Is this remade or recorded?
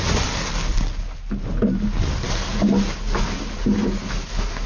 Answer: recorded